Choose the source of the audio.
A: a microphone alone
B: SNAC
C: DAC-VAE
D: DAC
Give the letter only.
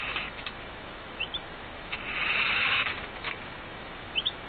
C